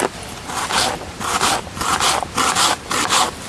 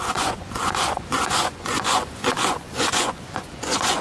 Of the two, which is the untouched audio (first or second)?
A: first